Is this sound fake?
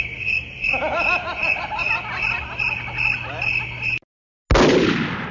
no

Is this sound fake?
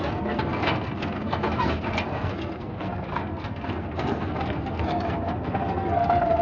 yes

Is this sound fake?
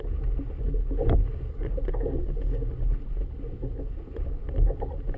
no